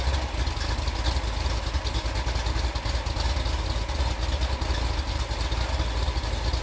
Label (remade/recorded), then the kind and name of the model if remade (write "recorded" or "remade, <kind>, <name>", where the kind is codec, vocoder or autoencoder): recorded